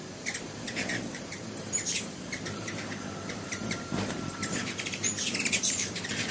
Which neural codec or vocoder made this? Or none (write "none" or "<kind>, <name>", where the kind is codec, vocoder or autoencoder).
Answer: vocoder, BigVGAN v2